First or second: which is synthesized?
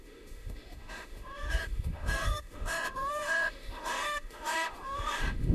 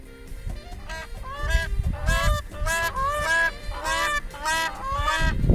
first